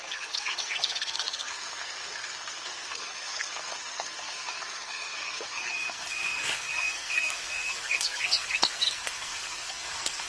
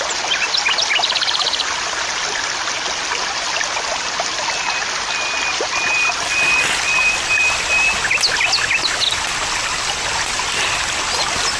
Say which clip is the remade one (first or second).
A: first